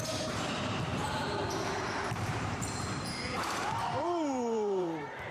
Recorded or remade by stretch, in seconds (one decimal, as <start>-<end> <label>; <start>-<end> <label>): 0.0-5.3 remade